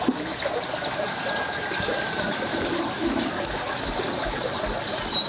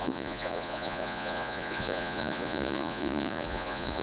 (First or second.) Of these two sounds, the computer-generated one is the second